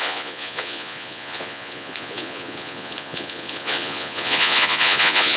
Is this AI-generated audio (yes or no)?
yes